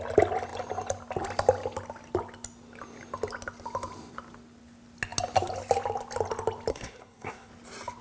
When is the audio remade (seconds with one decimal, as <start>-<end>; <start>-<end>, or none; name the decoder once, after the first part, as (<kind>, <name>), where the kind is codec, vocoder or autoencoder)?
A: 6.7-7.5 (codec, SNAC)